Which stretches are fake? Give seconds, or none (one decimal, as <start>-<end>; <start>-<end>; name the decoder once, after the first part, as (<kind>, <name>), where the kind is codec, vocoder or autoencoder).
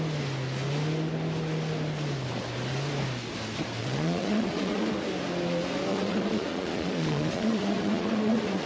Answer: 3.8-4.9 (vocoder, Vocos); 5.9-8.7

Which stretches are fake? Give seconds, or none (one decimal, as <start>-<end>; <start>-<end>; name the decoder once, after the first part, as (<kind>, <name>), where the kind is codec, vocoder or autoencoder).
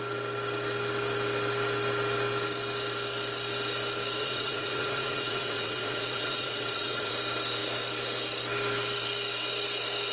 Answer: 4.2-7.1 (vocoder, WaveNeXt)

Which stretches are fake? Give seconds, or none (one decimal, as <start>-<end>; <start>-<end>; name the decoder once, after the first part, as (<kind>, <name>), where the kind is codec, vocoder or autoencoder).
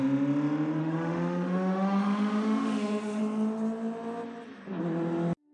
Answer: 0.8-3.2 (autoencoder, DAC-VAE)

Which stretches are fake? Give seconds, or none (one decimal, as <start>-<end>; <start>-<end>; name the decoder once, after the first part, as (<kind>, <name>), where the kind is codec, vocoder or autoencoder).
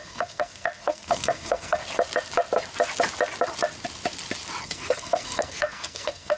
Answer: 0.0-1.8 (codec, SNAC); 4.6-6.4